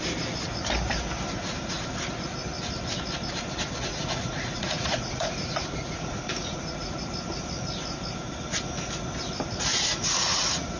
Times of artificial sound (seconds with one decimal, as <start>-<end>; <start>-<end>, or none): 3.9-7.0; 9.7-10.8